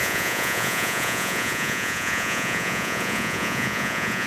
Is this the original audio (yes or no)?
no